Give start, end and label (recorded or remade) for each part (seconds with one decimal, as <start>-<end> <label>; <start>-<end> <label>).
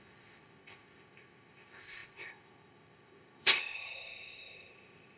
0.0-5.2 remade